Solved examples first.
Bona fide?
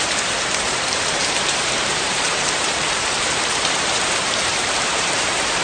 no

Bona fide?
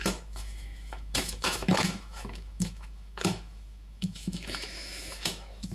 no